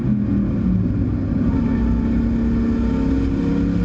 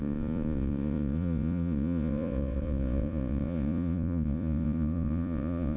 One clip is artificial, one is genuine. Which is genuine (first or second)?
first